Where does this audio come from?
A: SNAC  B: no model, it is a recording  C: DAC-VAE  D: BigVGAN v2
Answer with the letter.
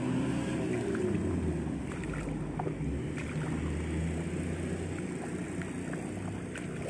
B